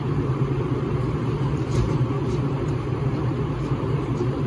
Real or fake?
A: fake